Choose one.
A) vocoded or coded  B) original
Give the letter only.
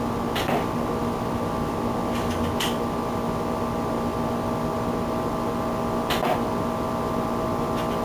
B